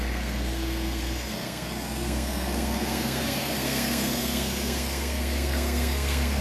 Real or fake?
fake